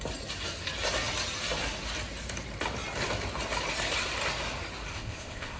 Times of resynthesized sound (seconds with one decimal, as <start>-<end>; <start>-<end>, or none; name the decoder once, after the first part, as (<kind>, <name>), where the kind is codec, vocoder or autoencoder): 4.9-5.6 (codec, ZipCodec)